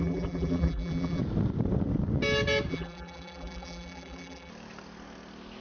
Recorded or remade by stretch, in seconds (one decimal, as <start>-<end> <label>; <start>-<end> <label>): 0.0-1.2 remade; 1.2-2.7 recorded; 2.7-4.5 remade; 4.5-5.6 recorded